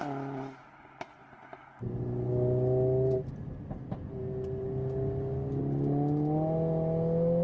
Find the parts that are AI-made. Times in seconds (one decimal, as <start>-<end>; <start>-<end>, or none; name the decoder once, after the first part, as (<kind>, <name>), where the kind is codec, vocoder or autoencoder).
none